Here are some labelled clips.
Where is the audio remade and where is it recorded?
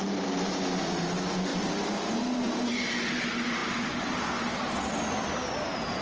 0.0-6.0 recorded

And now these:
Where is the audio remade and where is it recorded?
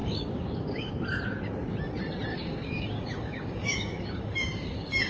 0.0-0.9 remade; 0.9-2.3 recorded; 2.3-5.1 remade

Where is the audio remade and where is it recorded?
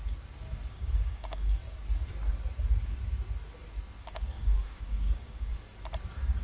0.0-0.7 recorded; 0.7-1.6 remade; 1.6-4.0 recorded; 4.0-5.5 remade; 5.5-6.4 recorded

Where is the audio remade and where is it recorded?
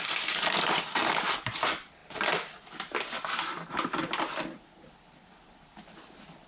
0.0-6.5 recorded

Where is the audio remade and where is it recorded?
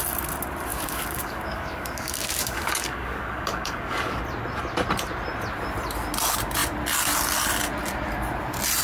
0.0-0.7 recorded; 0.7-4.2 remade; 4.2-8.8 recorded